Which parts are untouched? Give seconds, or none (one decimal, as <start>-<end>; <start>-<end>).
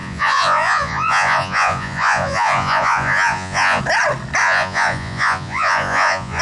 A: 3.8-4.4